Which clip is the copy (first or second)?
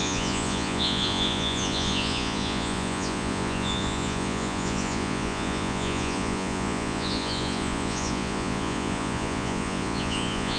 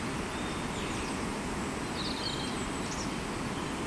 first